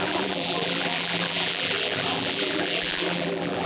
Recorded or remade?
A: remade